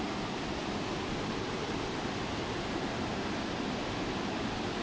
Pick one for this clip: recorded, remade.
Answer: recorded